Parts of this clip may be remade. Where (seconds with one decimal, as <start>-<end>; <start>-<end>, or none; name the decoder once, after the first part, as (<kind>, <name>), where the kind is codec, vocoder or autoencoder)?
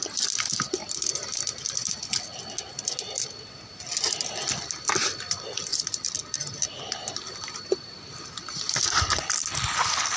0.8-1.9 (vocoder, BigVGAN v2); 5.7-8.0